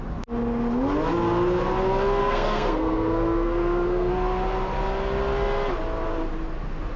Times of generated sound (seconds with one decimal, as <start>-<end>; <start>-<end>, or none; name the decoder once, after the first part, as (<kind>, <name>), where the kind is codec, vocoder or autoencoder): 2.2-4.1 (codec, SNAC)